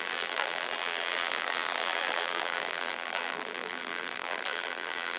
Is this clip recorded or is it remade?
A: remade